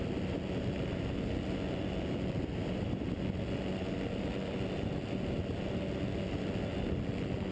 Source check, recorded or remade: recorded